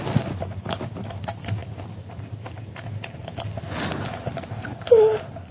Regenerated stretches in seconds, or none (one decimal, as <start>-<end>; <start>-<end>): none